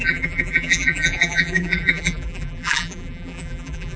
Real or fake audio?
fake